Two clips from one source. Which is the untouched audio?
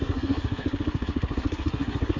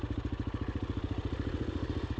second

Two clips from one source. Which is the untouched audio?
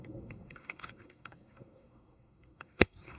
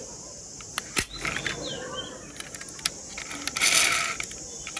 second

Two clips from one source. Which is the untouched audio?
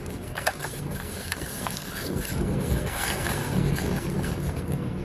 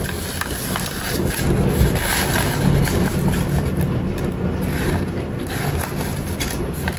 second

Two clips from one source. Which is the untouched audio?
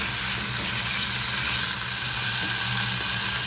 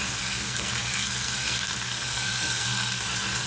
first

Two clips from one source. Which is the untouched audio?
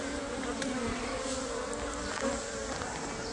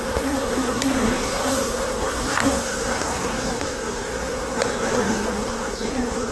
first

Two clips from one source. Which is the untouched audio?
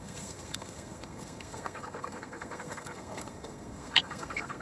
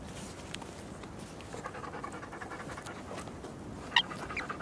second